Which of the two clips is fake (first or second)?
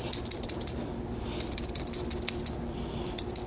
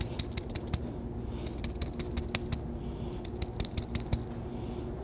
first